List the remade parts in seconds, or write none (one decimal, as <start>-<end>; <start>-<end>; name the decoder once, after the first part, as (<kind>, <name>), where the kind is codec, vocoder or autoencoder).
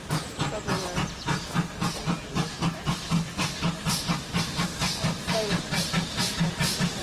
0.0-0.7 (vocoder, BigVGAN v2); 3.9-4.8; 6.2-7.0